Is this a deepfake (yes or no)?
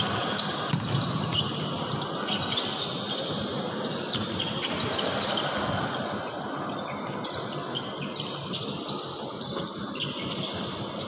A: no